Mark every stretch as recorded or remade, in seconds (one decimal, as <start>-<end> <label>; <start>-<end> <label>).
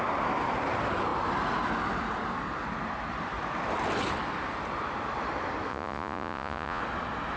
0.0-5.7 recorded; 5.7-6.8 remade; 6.8-7.4 recorded